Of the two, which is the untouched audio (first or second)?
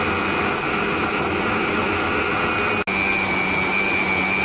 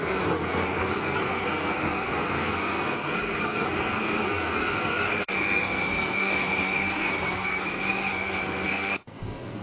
first